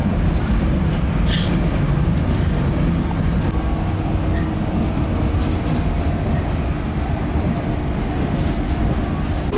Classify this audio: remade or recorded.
recorded